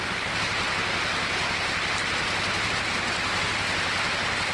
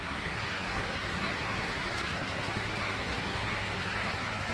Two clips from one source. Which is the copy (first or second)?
second